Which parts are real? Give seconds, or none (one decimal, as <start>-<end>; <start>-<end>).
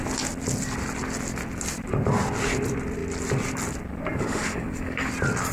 0.0-4.1; 5.1-5.5